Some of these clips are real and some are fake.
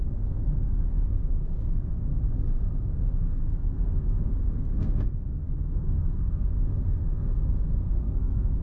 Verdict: fake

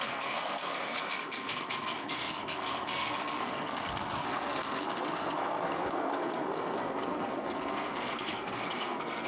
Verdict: fake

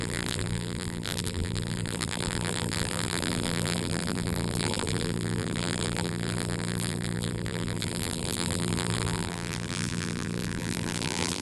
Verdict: fake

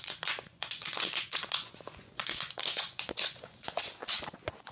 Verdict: fake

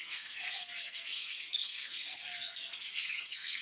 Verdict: fake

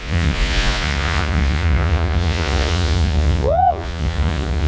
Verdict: fake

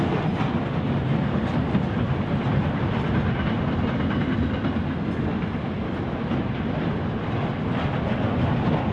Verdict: real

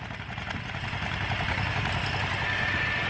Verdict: real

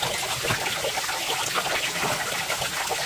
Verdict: real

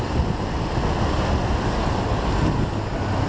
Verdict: real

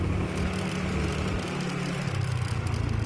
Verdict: real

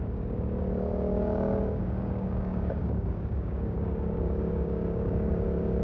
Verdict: fake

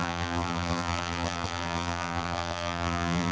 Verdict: fake